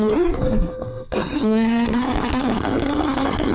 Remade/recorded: remade